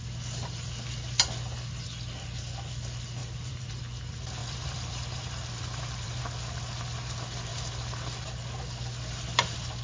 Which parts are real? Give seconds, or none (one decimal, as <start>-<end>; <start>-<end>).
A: 0.0-3.2; 3.7-4.4; 6.2-9.8